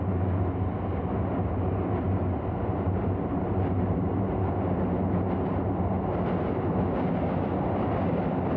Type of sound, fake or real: real